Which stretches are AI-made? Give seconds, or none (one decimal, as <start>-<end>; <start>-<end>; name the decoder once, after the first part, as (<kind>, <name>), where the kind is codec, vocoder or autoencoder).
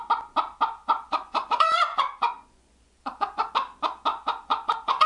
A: 0.8-3.5 (vocoder, Vocos); 4.1-5.1